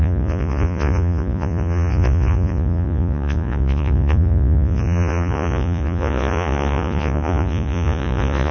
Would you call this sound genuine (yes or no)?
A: no